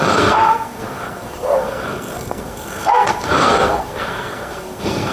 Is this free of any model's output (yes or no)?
no